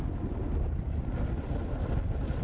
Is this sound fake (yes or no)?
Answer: no